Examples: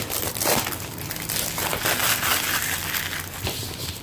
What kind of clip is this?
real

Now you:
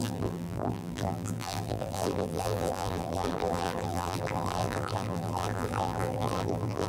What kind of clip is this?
fake